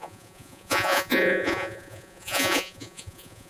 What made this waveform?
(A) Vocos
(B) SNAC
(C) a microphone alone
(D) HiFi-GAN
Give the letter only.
A